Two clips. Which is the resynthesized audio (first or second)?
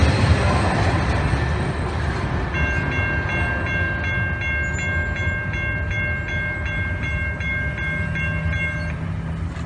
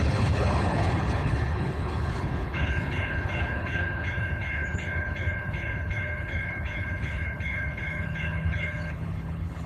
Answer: second